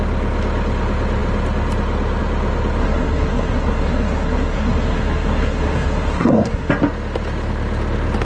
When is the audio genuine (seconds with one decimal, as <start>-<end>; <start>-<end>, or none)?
0.0-2.8; 6.7-8.2